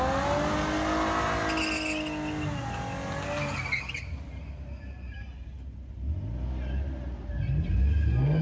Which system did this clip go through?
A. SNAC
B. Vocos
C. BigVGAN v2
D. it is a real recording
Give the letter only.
D